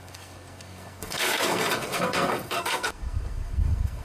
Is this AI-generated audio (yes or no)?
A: yes